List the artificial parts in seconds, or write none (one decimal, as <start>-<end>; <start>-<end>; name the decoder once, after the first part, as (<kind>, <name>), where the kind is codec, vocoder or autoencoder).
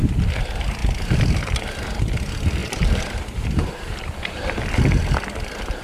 2.6-4.5 (vocoder, BigVGAN v2)